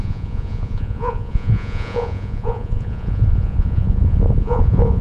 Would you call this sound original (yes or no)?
no